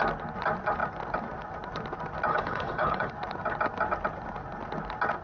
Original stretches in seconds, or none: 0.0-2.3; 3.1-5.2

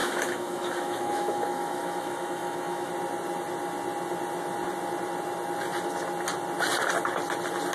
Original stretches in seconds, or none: 2.9-7.7